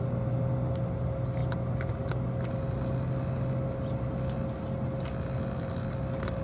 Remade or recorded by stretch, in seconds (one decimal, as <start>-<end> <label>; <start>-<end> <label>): 0.0-6.4 recorded